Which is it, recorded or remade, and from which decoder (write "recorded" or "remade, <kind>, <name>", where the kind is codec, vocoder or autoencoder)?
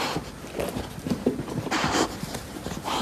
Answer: recorded